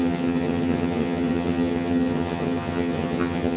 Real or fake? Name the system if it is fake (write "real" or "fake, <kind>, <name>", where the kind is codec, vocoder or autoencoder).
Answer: fake, vocoder, HiFi-GAN